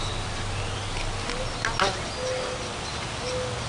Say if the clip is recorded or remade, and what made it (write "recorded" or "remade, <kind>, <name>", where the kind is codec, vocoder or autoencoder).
recorded